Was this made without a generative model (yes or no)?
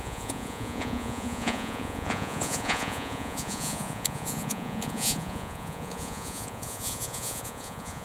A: no